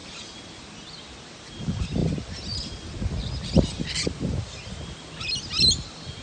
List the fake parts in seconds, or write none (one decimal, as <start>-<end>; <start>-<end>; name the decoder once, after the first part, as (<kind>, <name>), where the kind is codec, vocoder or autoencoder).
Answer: none